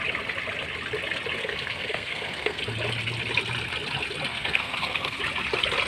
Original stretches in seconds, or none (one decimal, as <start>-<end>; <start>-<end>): 0.0-1.4; 2.6-4.3; 5.2-5.9